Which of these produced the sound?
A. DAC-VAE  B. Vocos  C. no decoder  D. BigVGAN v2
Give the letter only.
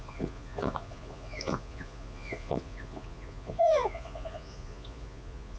B